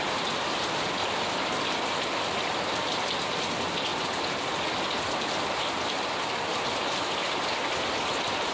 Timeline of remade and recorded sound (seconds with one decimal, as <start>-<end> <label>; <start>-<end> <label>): 0.0-8.5 recorded